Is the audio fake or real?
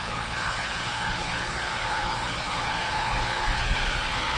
fake